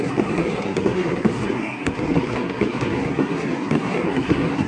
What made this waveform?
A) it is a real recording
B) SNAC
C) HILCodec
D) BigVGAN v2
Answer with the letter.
B